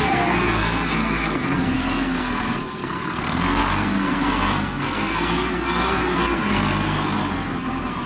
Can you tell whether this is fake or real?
fake